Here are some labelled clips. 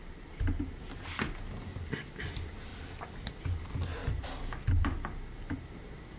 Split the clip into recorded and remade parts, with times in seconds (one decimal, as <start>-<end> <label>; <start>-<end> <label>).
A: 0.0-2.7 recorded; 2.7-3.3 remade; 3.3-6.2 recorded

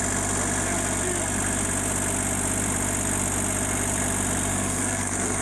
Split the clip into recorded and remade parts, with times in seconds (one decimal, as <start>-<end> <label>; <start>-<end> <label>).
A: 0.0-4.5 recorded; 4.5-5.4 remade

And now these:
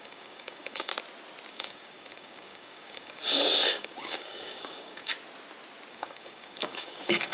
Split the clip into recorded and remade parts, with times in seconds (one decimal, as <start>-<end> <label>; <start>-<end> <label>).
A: 0.0-0.9 remade; 0.9-1.5 recorded; 1.5-5.1 remade; 5.1-5.9 recorded; 5.9-7.3 remade

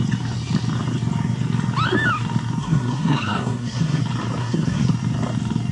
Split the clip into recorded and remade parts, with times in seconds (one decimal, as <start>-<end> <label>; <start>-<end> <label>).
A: 0.0-2.6 recorded; 2.6-4.0 remade; 4.0-4.4 recorded; 4.4-4.9 remade; 4.9-5.7 recorded

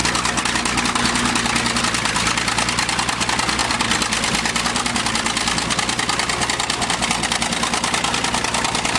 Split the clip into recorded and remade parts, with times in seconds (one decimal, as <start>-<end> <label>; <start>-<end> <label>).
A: 0.0-9.0 recorded